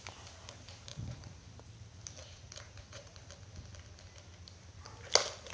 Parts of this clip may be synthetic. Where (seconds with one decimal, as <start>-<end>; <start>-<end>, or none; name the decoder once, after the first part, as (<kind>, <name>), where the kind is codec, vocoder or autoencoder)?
0.9-1.5 (vocoder, Vocos); 2.2-3.2